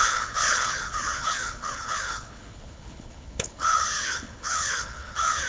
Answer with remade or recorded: remade